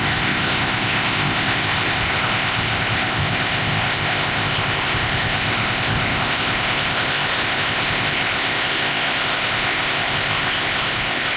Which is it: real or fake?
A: fake